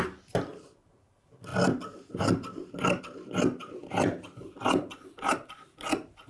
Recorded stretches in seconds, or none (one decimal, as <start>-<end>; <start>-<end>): 0.0-1.5; 3.0-3.8; 5.3-6.3